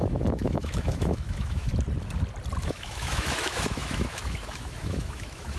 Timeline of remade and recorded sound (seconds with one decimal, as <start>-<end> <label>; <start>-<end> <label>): 0.0-1.7 remade; 1.7-2.6 recorded; 2.6-5.6 remade